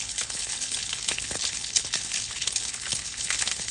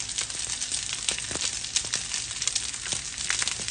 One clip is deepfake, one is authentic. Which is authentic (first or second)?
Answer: second